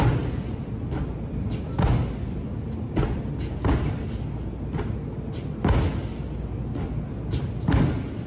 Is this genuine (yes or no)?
yes